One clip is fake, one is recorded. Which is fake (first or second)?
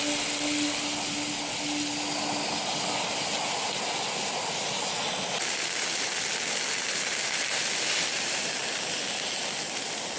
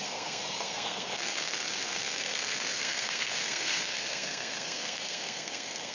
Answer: second